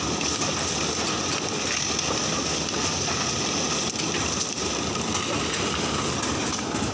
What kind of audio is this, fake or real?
real